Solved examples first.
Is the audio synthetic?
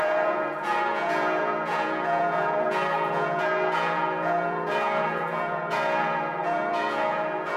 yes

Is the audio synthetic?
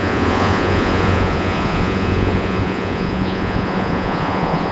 yes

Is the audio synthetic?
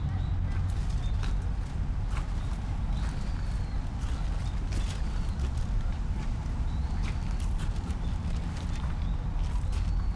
no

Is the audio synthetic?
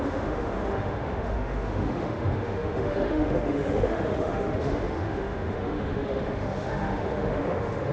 yes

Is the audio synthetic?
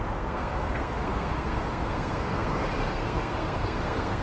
yes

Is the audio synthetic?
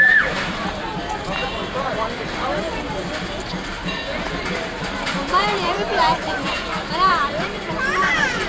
yes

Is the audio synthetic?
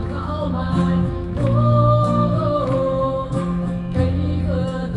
yes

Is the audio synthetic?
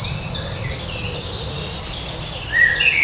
no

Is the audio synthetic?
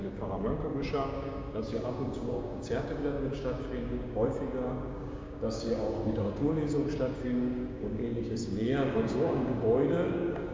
yes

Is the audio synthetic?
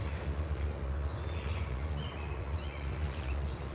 yes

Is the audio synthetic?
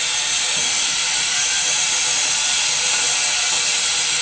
no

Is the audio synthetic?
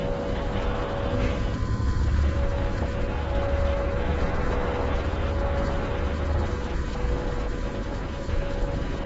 yes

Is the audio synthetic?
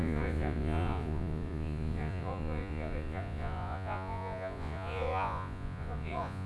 yes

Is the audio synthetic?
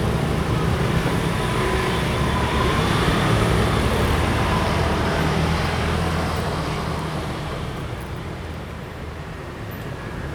yes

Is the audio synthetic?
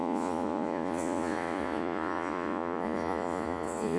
yes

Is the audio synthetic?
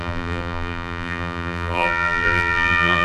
yes